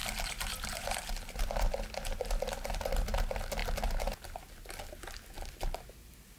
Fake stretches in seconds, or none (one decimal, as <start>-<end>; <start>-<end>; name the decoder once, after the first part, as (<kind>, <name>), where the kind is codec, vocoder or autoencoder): 0.0-1.4 (vocoder, BigVGAN v2)